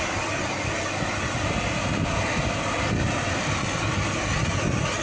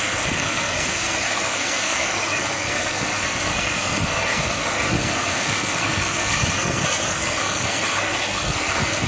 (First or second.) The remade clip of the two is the second